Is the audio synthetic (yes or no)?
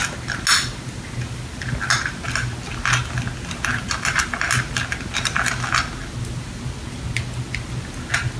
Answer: no